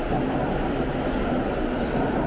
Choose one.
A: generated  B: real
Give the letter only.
B